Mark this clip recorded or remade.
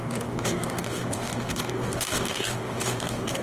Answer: remade